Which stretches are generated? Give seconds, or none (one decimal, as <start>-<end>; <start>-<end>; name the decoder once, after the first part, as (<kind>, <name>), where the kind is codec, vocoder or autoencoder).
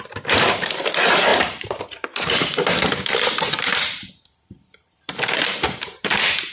0.0-6.5 (vocoder, BigVGAN v2)